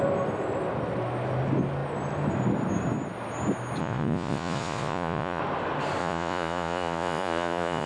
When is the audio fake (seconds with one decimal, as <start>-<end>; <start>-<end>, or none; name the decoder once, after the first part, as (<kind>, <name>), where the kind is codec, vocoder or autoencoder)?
3.8-5.4 (vocoder, Vocos); 6.0-7.9